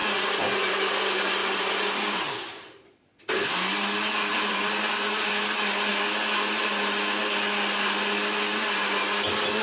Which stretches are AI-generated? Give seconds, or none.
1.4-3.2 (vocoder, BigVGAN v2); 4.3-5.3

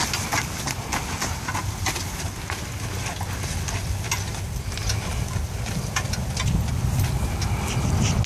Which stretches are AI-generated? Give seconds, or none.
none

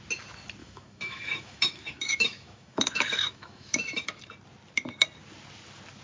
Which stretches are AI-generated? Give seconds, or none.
0.6-4.2 (autoencoder, DAC-VAE)

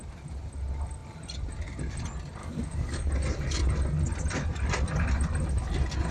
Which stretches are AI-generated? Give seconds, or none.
2.4-3.1 (codec, DAC)